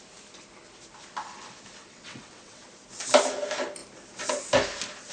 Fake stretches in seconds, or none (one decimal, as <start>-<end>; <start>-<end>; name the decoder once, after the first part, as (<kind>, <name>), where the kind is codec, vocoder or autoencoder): 1.8-2.6 (vocoder, WaveNeXt)